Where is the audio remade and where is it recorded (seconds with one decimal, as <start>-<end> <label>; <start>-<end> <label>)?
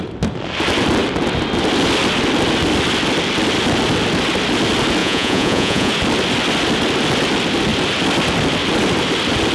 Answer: 0.0-5.0 recorded; 5.0-5.9 remade; 5.9-9.5 recorded